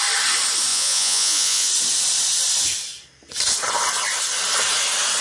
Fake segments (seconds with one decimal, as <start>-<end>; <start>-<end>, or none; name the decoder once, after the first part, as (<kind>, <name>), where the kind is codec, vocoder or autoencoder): 0.7-1.7 (vocoder, Vocos)